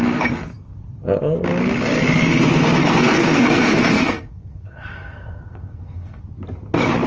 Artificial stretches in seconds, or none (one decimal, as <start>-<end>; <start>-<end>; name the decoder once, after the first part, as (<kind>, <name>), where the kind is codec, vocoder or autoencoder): 2.8-6.2 (codec, SNAC)